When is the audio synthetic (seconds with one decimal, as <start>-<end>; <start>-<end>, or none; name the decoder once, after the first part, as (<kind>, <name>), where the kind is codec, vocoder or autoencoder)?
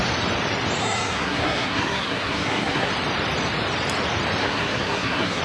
0.8-2.9 (codec, SNAC); 4.4-5.4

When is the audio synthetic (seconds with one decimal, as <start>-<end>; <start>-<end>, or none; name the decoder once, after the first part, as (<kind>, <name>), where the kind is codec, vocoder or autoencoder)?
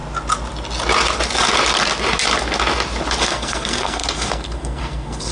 3.2-5.3 (codec, SNAC)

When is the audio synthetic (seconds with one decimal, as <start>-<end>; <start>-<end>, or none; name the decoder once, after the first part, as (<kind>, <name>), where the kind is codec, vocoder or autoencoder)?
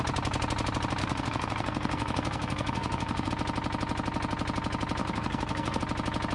1.0-3.3 (codec, SNAC); 5.0-5.8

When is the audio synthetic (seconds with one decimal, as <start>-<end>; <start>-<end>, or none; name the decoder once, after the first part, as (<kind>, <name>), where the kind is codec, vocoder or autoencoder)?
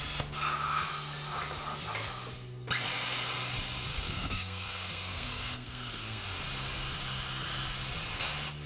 3.9-6.2 (codec, SNAC)